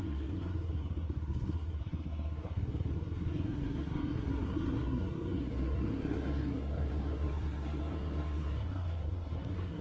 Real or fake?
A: fake